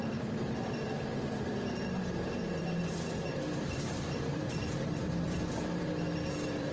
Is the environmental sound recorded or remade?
remade